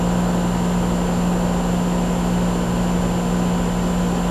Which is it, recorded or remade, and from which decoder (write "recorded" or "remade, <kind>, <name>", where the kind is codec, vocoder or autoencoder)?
recorded